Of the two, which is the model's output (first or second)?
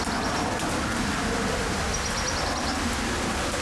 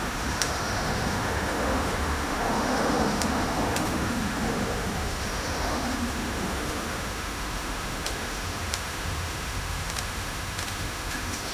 second